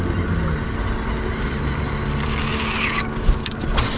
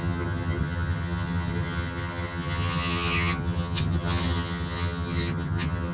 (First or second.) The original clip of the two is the first